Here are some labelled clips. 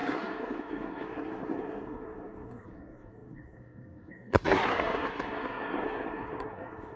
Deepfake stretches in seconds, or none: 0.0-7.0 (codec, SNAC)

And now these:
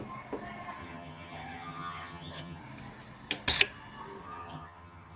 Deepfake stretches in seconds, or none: 0.8-2.6 (vocoder, HiFi-GAN); 4.2-5.2

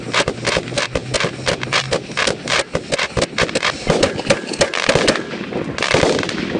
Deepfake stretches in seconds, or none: none

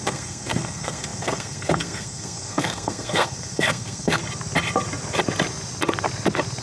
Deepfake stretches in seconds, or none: 0.0-4.2 (codec, SNAC)

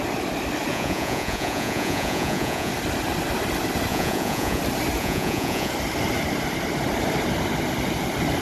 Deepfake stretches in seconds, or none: 0.7-2.7 (vocoder, Vocos); 3.9-4.6; 5.0-5.7

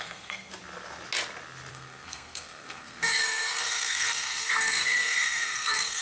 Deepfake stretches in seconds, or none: 0.0-0.5 (codec, SNAC); 1.7-6.0